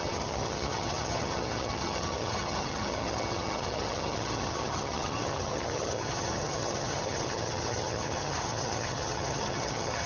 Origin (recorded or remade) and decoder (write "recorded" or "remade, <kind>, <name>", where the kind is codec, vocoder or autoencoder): remade, vocoder, HiFi-GAN